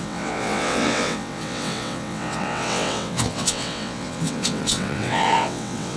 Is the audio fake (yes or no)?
yes